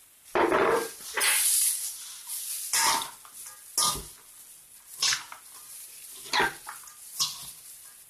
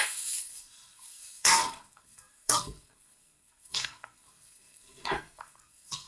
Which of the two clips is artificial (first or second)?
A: second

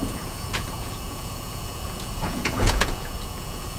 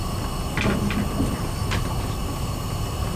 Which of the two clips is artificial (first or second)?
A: first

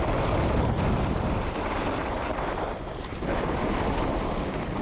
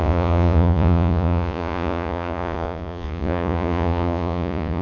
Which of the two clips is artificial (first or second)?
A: second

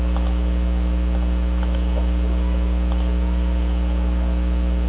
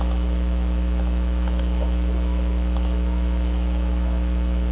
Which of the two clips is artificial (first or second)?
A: second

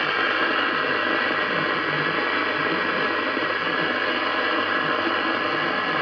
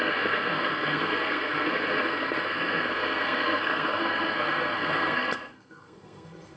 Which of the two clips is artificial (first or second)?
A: second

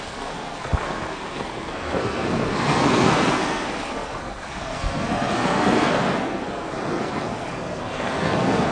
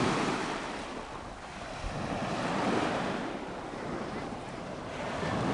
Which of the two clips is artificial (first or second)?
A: first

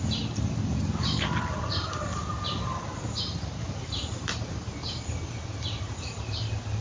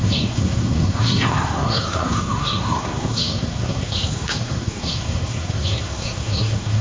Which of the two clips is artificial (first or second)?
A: second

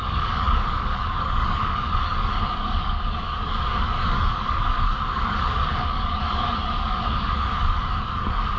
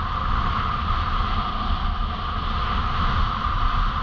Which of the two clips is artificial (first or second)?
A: first